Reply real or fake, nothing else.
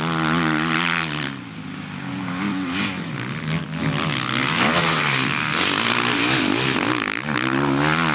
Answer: real